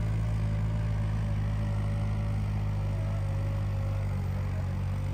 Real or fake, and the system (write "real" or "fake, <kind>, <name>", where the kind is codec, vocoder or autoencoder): real